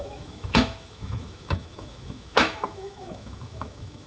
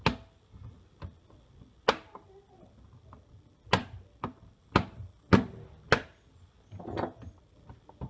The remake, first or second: first